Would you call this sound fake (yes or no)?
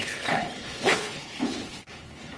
yes